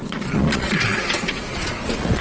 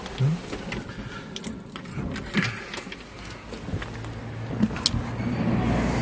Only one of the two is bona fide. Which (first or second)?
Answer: second